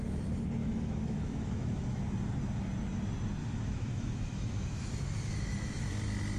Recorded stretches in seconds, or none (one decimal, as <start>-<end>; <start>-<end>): 0.0-0.6; 2.0-3.4; 5.9-6.4